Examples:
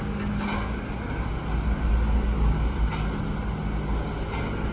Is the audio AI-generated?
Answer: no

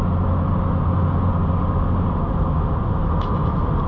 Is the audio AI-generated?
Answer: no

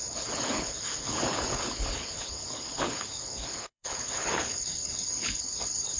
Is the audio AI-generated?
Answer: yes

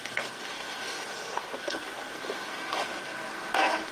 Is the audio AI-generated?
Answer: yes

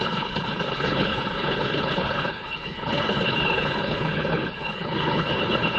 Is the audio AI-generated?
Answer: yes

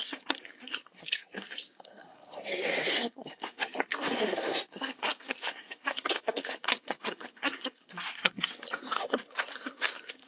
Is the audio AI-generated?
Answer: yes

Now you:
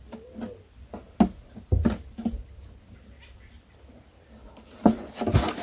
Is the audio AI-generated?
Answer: no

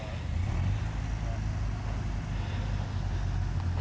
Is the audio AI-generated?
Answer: no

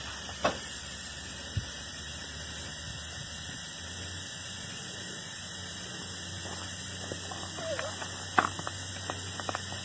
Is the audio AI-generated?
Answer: no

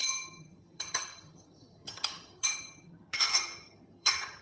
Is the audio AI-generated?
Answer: yes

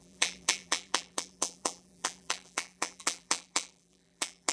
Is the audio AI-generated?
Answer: yes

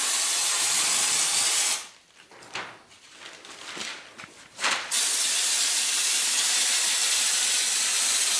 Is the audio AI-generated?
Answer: yes